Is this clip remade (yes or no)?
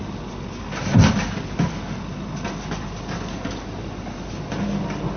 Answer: no